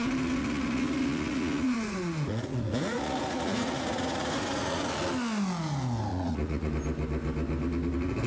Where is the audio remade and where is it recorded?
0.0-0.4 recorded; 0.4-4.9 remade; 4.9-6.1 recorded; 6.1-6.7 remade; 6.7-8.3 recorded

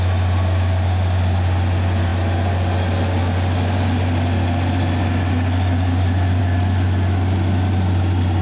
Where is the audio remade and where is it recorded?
0.0-8.4 recorded

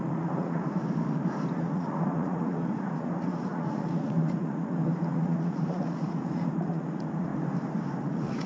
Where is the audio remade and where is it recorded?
0.0-0.8 remade; 0.8-1.5 recorded; 1.5-7.3 remade; 7.3-8.0 recorded; 8.0-8.5 remade

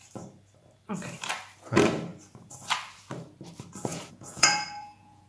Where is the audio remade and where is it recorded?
0.0-3.9 recorded; 3.9-5.3 remade

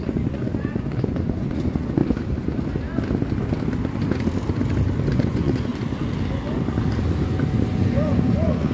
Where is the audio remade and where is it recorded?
0.0-2.0 remade; 2.0-5.1 recorded; 5.1-5.7 remade; 5.7-7.8 recorded; 7.8-8.7 remade